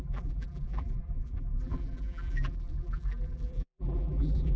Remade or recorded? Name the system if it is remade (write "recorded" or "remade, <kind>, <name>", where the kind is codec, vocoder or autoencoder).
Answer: remade, vocoder, BigVGAN v2